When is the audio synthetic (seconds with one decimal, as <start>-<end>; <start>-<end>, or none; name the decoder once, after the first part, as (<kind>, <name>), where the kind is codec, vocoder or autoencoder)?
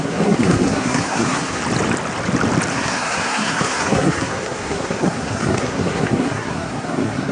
0.0-1.6 (codec, SNAC); 2.7-7.3